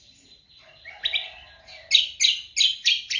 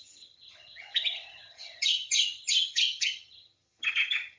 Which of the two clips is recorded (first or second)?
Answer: first